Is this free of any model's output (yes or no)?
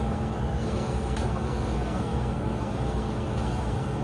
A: no